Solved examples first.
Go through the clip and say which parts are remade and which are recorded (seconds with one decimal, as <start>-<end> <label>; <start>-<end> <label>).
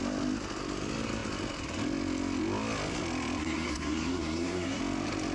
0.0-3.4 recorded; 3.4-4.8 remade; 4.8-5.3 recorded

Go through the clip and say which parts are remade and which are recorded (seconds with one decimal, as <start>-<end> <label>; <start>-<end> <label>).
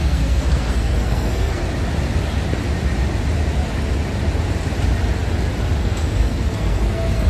0.0-1.6 remade; 1.6-5.8 recorded; 5.8-7.3 remade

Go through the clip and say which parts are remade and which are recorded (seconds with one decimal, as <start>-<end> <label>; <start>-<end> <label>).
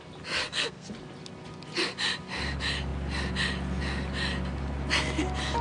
0.0-0.4 recorded; 0.4-0.9 remade; 0.9-5.6 recorded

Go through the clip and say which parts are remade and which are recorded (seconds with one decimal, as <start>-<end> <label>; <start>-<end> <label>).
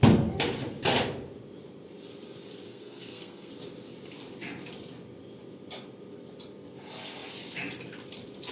0.0-2.7 recorded; 2.7-3.5 remade; 3.5-8.5 recorded